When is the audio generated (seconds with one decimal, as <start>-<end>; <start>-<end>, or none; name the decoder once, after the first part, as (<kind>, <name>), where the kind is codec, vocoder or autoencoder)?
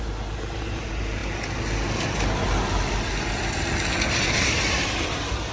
0.0-1.2 (vocoder, BigVGAN v2); 4.1-5.5